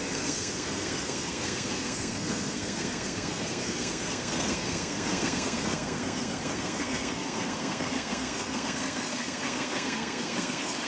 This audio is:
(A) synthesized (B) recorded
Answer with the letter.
A